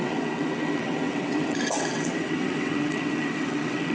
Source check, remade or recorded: remade